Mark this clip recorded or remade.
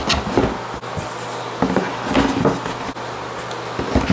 recorded